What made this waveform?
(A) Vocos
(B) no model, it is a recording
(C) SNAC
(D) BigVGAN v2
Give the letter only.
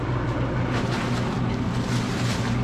B